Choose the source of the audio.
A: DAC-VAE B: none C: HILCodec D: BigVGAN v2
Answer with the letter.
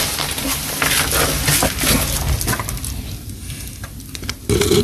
B